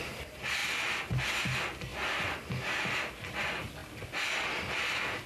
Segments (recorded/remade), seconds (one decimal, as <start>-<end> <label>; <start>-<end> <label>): 0.0-5.3 recorded